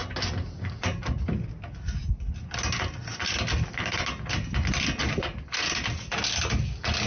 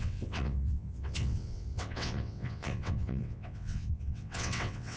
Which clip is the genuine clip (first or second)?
first